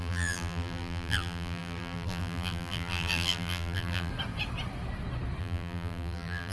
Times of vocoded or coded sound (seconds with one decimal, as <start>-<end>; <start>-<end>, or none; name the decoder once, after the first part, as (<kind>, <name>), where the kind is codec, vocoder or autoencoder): 0.0-4.1 (vocoder, BigVGAN v2); 5.4-6.5